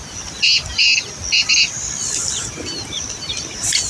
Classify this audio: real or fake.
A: real